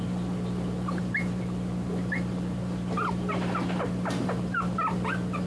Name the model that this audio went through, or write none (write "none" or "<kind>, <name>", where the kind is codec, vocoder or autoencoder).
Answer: none